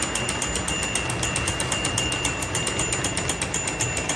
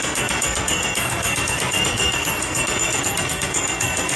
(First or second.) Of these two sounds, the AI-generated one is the second